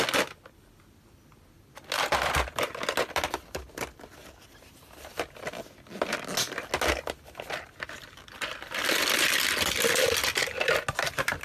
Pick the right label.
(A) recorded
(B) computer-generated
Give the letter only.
A